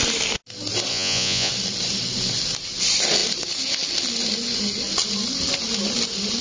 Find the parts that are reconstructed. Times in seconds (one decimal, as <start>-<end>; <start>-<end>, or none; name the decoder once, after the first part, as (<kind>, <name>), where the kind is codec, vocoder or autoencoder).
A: 0.9-1.5 (vocoder, Vocos)

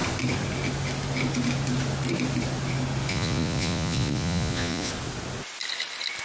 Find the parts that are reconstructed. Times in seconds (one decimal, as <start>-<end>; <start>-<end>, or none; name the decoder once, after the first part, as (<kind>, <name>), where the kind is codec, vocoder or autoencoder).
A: 3.1-4.9 (vocoder, Vocos)

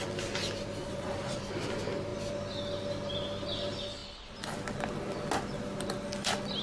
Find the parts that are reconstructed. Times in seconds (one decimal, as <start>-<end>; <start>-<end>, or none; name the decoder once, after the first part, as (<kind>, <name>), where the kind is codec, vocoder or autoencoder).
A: 0.8-1.4 (vocoder, Vocos)

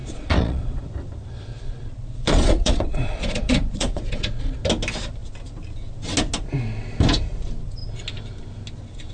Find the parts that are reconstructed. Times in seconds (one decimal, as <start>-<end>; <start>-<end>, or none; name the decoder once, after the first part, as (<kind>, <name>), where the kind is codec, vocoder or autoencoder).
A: 0.0-0.8 (vocoder, Vocos); 1.5-4.6

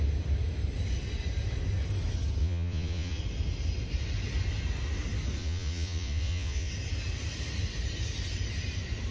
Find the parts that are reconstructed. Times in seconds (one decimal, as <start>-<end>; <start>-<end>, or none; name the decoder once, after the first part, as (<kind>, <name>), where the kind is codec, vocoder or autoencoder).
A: 2.4-3.2 (vocoder, Vocos); 5.4-6.7

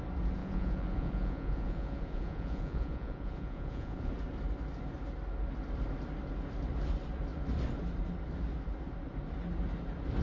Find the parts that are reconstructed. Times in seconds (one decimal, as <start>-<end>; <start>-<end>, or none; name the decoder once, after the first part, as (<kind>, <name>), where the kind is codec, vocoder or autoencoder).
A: 0.4-4.1 (vocoder, Vocos)

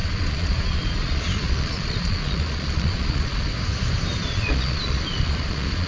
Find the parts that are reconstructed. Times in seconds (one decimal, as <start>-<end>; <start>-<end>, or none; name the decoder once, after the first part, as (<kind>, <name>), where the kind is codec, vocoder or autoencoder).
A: 0.0-3.5 (vocoder, Vocos); 4.2-5.9